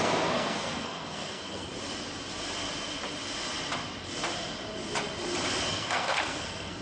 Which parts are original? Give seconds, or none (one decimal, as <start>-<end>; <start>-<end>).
1.7-5.7